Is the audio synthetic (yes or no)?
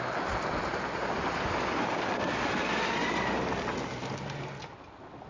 no